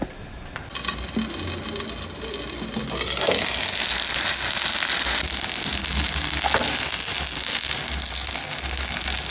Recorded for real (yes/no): yes